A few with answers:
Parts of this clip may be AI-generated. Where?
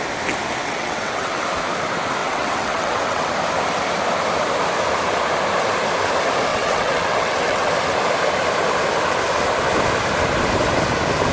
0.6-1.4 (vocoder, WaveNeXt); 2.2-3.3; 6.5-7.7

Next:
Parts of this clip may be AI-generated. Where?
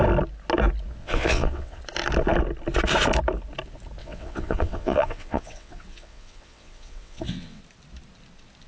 1.0-1.8 (vocoder, WaveNeXt); 4.0-7.6